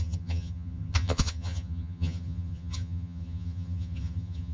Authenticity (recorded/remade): remade